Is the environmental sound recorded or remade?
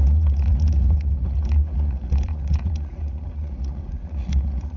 remade